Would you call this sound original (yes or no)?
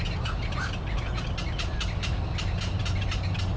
yes